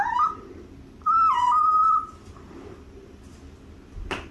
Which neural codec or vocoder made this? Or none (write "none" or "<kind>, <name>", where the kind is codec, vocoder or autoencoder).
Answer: none